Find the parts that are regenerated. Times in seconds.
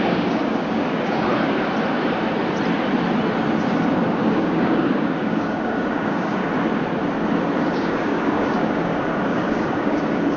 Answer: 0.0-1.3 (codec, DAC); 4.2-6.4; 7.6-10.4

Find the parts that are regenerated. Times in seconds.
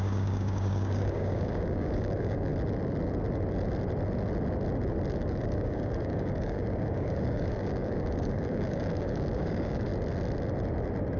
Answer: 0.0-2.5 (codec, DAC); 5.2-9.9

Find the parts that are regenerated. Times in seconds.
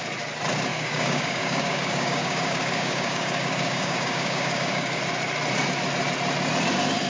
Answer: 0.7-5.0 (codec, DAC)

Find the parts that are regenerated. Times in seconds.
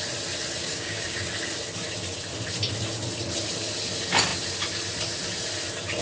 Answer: 0.6-1.3 (codec, DAC)